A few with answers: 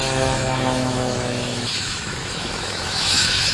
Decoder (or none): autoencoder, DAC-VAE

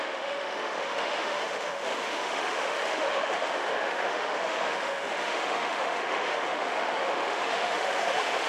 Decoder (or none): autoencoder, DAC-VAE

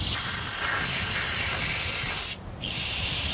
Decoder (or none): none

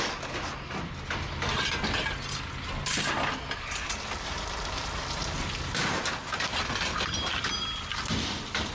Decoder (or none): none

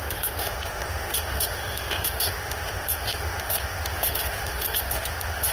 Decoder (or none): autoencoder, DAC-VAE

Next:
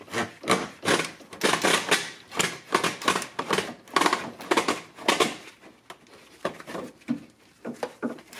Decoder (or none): none